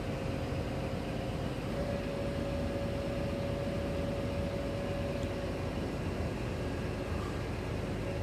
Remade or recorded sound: recorded